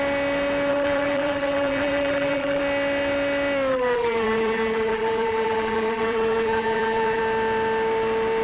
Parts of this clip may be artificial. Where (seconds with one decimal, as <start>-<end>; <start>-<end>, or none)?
0.7-2.6; 3.7-7.2